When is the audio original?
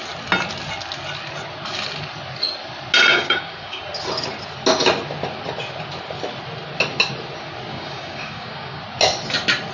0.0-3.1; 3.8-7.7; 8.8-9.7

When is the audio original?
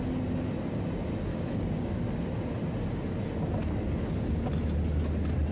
0.0-1.3; 1.9-5.5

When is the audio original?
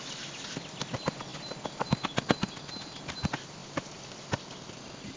0.0-5.2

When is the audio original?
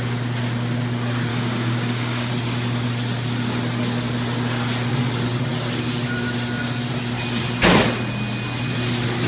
0.0-1.3; 2.3-9.3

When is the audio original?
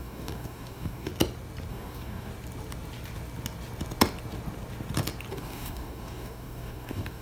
1.1-1.7; 2.3-5.3